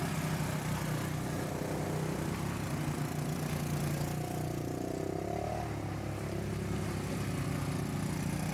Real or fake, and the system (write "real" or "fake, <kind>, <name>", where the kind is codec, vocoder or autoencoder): real